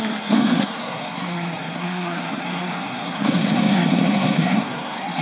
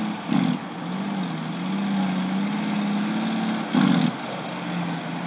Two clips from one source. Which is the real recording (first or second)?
second